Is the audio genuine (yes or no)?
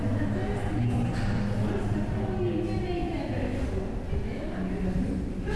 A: yes